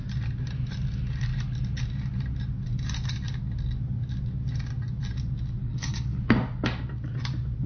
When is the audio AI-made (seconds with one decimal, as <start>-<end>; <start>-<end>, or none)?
5.6-6.2